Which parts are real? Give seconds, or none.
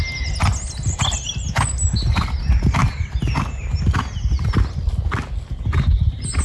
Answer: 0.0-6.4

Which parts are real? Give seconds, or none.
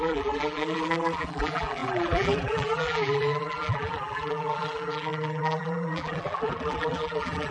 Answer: none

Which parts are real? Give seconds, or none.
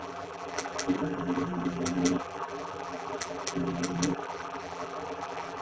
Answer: none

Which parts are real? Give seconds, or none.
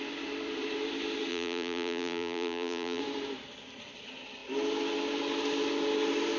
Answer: 0.0-1.3; 3.0-6.4